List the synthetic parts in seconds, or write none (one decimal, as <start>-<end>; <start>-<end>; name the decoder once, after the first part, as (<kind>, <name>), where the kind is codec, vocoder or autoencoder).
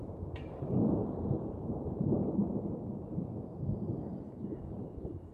0.0-5.3 (vocoder, BigVGAN v2)